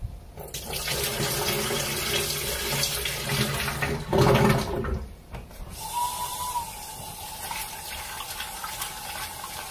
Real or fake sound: real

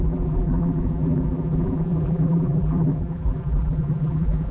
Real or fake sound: fake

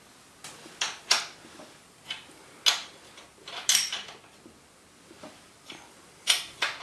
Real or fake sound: real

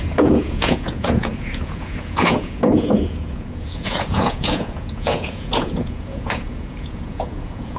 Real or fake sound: fake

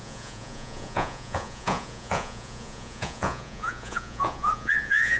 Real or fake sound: fake